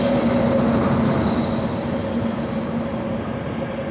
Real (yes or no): yes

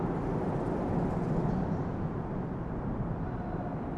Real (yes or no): yes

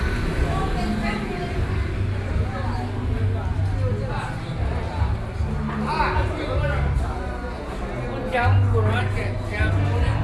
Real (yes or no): yes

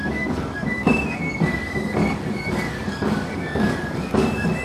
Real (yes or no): no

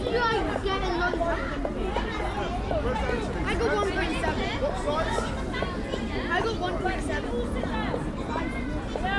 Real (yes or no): yes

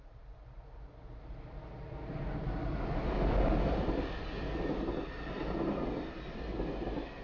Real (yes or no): yes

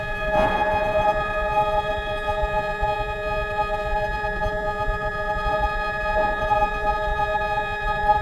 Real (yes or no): no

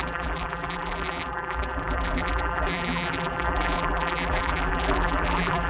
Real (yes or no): no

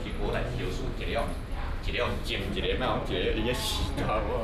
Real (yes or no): yes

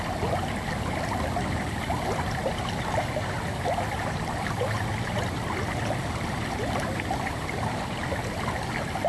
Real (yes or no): yes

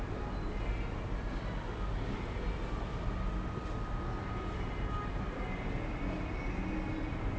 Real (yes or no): yes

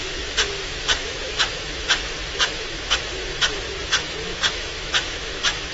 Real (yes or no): no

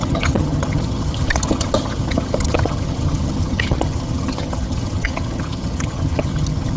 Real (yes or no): no